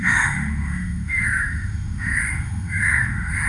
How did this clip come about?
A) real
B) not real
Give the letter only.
B